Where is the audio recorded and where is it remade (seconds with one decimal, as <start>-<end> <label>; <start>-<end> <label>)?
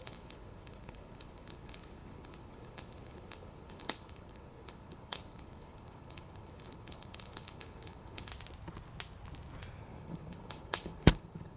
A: 0.0-8.3 remade; 8.3-9.8 recorded; 9.8-11.6 remade